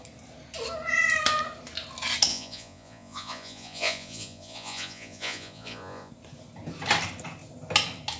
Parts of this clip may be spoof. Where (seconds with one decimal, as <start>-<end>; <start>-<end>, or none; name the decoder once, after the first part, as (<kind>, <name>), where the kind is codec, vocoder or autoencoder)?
2.3-6.1 (vocoder, Vocos)